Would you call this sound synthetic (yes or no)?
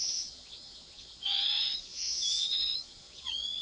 yes